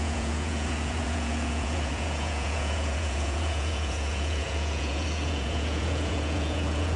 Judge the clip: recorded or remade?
remade